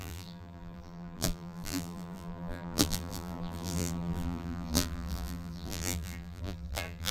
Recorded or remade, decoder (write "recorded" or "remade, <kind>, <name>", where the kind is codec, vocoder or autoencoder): remade, vocoder, BigVGAN v2